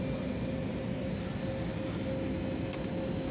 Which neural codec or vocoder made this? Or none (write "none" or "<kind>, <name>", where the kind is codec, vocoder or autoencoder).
none